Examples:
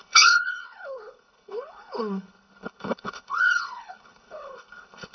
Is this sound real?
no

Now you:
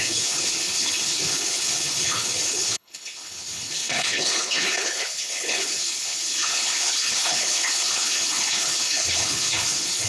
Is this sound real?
no